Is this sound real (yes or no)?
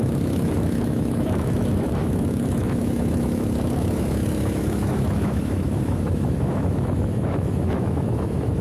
no